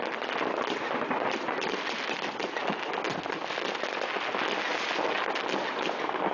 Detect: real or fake real